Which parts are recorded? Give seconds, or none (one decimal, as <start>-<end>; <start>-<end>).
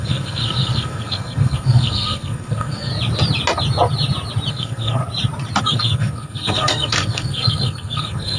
2.9-4.5; 5.0-5.6